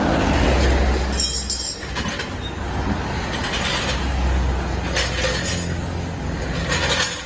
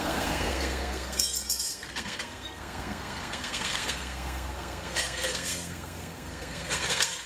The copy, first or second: second